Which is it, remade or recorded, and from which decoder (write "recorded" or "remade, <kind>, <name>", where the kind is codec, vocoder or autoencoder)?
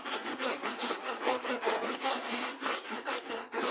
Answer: remade, codec, SNAC